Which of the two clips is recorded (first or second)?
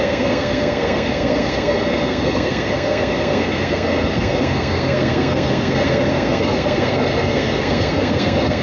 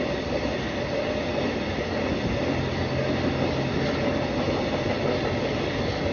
second